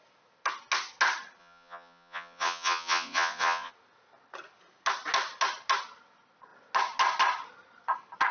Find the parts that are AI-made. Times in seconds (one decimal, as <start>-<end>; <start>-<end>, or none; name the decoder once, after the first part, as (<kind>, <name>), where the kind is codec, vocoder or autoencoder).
1.4-3.7 (vocoder, Vocos)